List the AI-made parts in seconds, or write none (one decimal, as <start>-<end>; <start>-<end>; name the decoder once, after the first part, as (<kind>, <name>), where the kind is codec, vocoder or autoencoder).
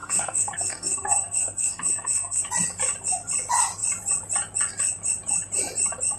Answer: 0.0-2.4 (codec, SNAC)